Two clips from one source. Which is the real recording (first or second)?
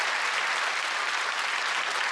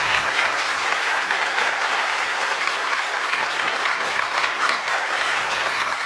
first